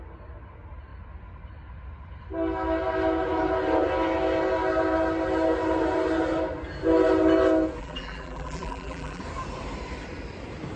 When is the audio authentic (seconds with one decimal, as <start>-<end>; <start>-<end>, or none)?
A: 0.0-7.8; 9.2-10.8